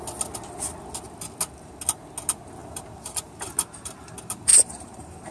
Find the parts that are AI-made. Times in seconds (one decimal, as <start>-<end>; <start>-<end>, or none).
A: 4.5-5.3